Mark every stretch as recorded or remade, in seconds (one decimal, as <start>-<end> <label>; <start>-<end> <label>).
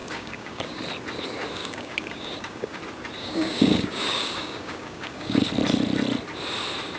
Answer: 0.0-0.8 remade; 0.8-1.6 recorded; 1.6-2.8 remade; 2.8-3.2 recorded; 3.2-5.5 remade; 5.5-7.0 recorded